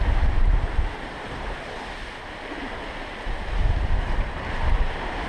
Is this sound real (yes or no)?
yes